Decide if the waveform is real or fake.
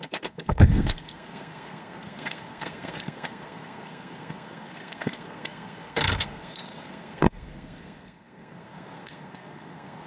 fake